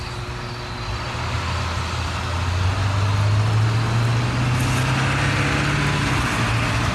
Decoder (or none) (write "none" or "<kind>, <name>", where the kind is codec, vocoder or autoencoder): none